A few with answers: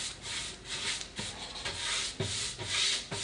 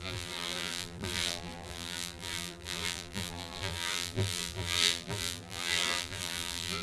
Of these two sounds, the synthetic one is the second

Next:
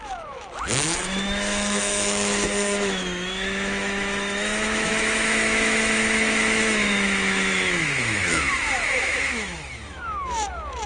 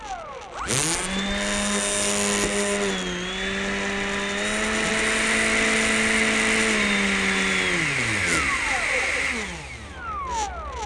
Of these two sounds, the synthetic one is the first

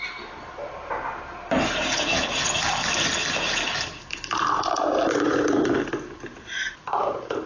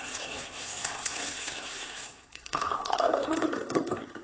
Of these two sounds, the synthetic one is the second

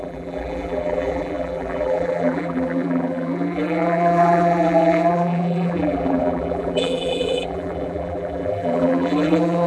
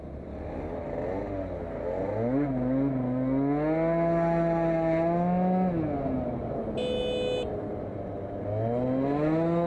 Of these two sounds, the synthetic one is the first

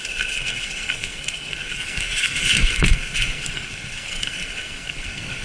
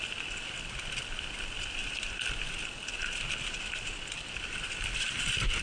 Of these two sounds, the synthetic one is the first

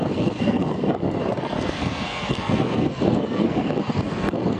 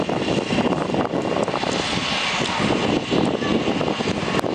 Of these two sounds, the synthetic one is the first